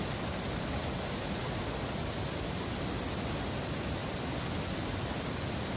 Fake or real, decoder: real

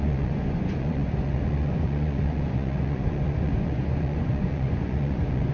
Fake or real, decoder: fake, vocoder, Vocos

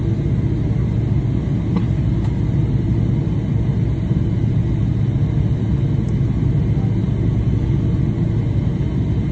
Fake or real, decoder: real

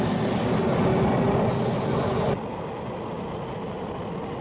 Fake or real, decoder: real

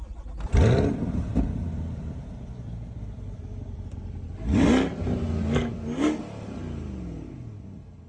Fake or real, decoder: real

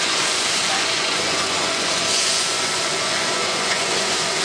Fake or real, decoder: fake, vocoder, Vocos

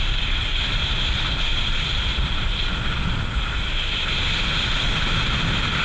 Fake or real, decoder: real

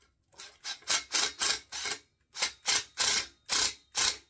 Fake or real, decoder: real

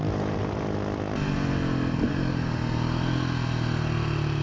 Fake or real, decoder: real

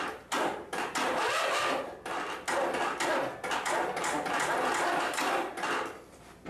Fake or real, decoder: real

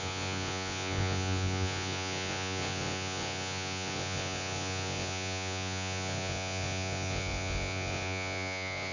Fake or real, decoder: fake, vocoder, Vocos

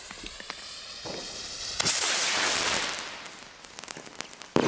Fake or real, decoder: real